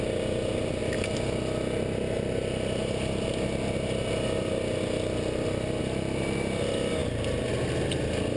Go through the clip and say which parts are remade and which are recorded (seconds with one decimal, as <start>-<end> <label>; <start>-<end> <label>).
0.0-8.4 recorded